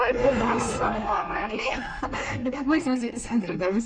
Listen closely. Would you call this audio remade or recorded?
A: remade